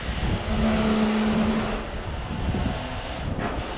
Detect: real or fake real